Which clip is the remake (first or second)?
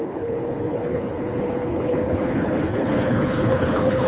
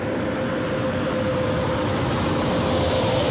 first